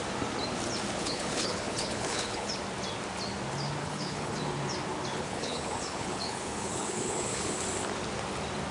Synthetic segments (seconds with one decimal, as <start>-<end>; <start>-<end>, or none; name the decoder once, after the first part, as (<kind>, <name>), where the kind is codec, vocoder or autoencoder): 1.0-2.5 (codec, HILCodec); 3.8-4.4; 5.1-7.6